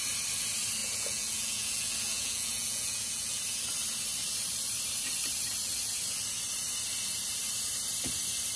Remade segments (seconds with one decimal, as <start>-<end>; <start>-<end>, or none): 0.8-3.4